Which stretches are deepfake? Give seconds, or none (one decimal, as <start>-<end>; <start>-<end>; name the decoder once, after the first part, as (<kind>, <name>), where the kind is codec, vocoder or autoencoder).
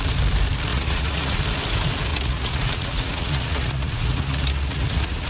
0.7-1.4 (vocoder, Vocos); 2.1-5.3